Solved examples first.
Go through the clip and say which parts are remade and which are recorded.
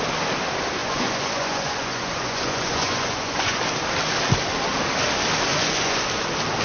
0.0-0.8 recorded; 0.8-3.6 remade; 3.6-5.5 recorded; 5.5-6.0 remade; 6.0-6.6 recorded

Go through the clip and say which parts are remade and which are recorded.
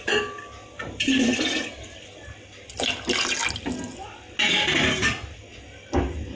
0.0-6.4 recorded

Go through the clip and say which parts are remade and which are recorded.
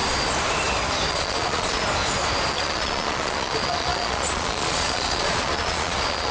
0.0-1.1 recorded; 1.1-1.8 remade; 1.8-2.5 recorded; 2.5-6.3 remade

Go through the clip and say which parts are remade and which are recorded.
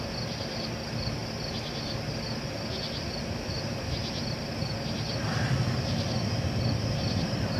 0.0-7.6 recorded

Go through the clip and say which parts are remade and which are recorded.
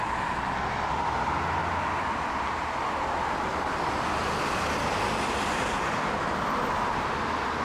0.0-7.6 recorded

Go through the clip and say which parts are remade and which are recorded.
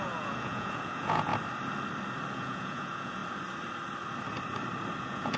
0.0-1.3 remade; 1.3-2.4 recorded; 2.4-3.2 remade; 3.2-5.0 recorded; 5.0-5.4 remade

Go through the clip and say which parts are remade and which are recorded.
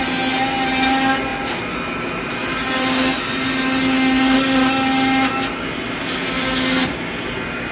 0.0-7.7 recorded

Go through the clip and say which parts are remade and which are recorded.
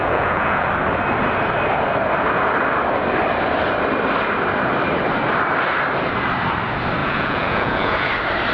0.0-0.7 remade; 0.7-7.0 recorded; 7.0-8.1 remade; 8.1-8.5 recorded